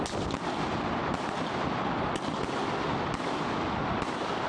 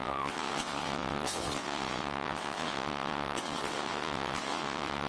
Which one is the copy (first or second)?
second